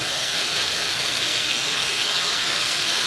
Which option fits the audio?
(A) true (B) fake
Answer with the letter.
B